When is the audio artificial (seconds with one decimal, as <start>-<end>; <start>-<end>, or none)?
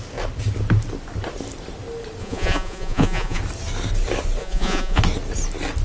2.2-3.4; 4.4-5.0